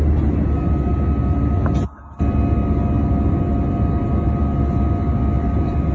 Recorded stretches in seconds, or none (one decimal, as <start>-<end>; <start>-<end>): 0.0-5.9